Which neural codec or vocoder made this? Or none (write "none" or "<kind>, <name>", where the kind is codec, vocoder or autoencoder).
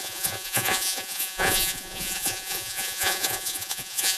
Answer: vocoder, Vocos